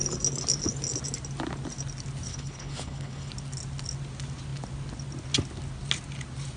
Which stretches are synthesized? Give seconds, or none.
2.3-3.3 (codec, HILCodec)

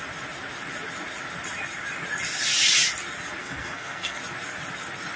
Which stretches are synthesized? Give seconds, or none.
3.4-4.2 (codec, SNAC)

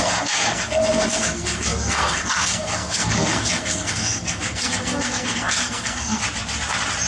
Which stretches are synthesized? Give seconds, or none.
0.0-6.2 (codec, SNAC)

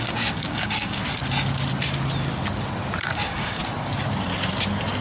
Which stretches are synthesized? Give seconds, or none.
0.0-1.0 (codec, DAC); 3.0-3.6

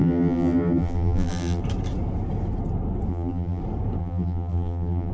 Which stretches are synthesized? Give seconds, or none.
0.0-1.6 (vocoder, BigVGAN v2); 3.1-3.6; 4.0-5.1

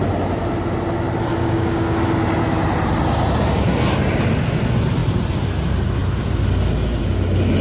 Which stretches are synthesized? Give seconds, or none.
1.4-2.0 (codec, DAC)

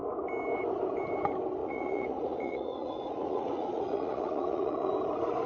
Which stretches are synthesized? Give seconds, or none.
1.6-4.9 (vocoder, Vocos)

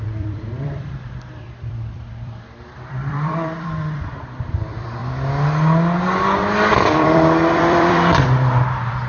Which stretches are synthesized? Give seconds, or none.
0.0-5.0 (vocoder, BigVGAN v2); 6.7-9.1